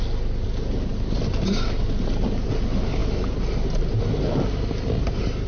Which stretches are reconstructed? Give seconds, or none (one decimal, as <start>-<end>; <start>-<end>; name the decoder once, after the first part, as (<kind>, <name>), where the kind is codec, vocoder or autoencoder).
none